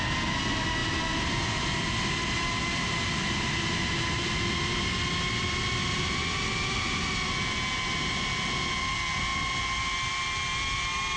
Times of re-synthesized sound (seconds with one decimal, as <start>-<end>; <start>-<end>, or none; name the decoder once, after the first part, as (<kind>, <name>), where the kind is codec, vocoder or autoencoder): none